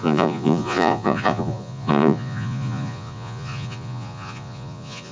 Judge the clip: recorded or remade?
remade